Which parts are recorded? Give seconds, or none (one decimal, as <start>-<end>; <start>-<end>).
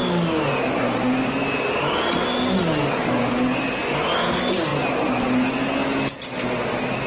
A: 0.0-7.1